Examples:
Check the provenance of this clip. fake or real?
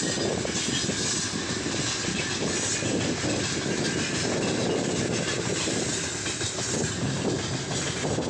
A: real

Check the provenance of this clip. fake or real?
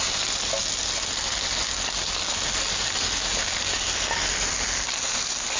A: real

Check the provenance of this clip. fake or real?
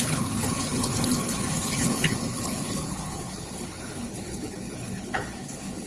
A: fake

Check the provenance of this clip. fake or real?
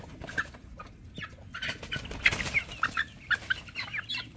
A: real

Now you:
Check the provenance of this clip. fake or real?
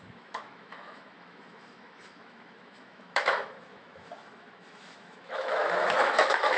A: fake